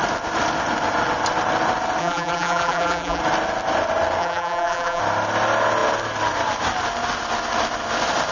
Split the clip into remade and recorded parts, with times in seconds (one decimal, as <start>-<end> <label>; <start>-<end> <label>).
0.0-2.0 recorded; 2.0-3.2 remade; 3.2-4.2 recorded; 4.2-5.0 remade; 5.0-8.3 recorded